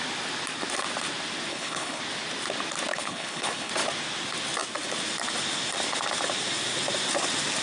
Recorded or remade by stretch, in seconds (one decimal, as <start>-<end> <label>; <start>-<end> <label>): 0.0-1.5 recorded; 1.5-2.0 remade; 2.0-2.9 recorded; 2.9-3.7 remade; 3.7-7.6 recorded